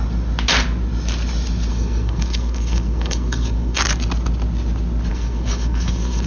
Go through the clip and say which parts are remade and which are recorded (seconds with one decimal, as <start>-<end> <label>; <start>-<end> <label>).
0.0-1.7 recorded; 1.7-3.8 remade; 3.8-5.1 recorded; 5.1-6.3 remade